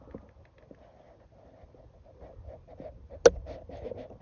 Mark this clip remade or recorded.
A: recorded